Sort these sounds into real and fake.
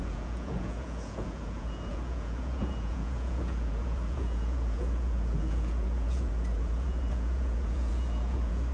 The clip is fake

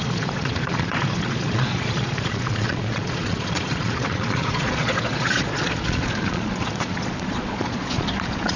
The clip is fake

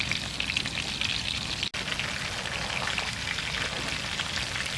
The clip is real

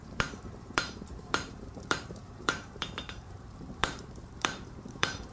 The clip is fake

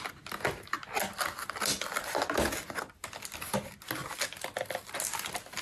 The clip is real